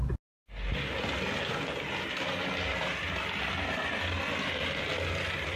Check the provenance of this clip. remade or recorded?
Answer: recorded